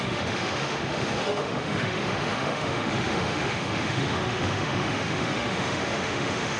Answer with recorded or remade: remade